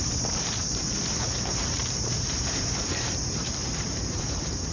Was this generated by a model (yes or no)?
yes